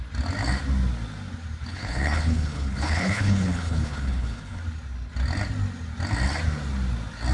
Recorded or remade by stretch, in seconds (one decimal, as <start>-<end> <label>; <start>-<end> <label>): 0.0-1.7 recorded; 1.7-4.6 remade; 4.6-7.3 recorded